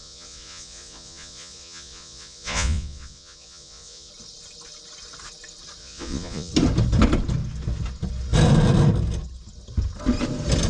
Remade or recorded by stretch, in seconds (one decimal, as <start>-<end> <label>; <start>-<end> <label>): 0.0-4.1 remade; 4.1-5.8 recorded; 5.8-6.5 remade; 6.5-10.7 recorded